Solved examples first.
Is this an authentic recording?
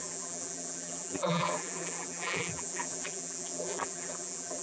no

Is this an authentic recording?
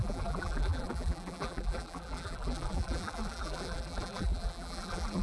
no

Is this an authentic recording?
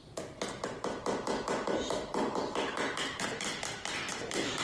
yes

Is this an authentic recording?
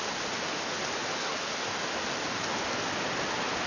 yes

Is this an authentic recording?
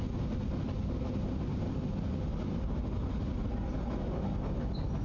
yes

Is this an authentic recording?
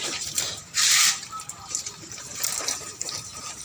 no